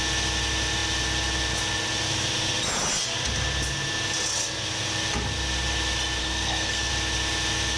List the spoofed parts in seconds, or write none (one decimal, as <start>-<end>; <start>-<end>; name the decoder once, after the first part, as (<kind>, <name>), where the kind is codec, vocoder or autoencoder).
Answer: 6.2-6.9 (codec, SNAC)